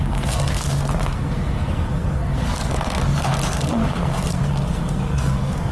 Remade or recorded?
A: remade